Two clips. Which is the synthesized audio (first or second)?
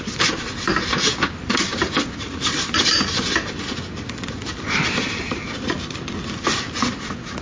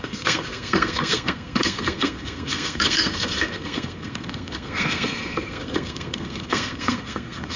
second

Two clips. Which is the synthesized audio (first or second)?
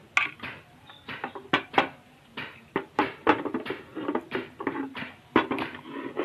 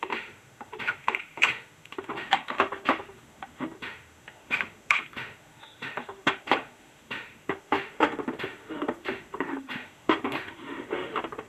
second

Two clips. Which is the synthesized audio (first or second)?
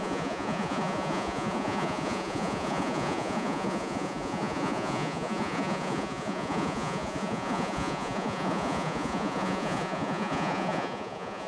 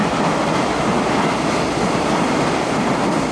first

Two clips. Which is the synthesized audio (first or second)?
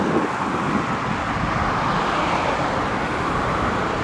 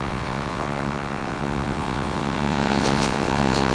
second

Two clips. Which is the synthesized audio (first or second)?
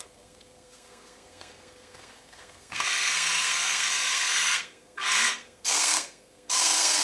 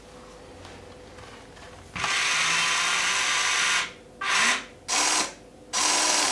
first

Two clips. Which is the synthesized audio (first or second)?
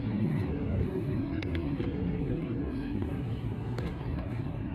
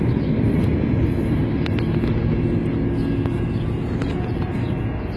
first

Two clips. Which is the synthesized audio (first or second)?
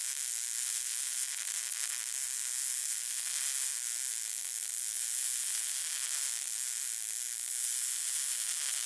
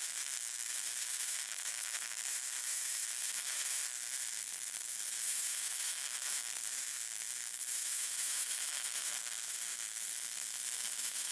second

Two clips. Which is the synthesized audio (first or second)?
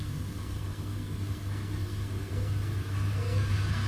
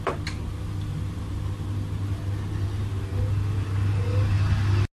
first